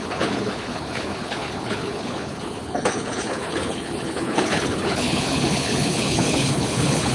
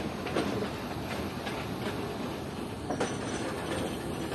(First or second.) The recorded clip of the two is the second